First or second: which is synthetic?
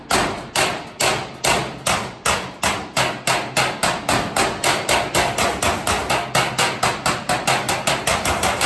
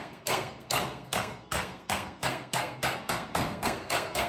second